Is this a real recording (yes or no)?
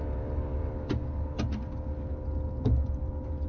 yes